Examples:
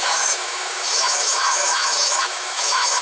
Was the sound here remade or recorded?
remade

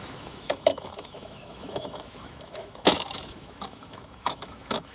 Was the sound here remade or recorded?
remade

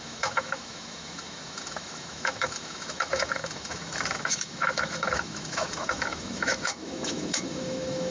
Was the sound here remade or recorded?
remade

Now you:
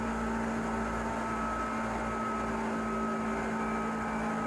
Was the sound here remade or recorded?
recorded